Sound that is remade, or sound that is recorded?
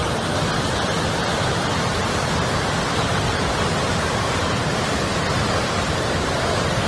remade